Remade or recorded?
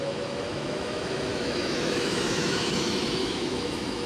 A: remade